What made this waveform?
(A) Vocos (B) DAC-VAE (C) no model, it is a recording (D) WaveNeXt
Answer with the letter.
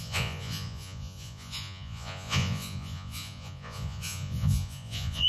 A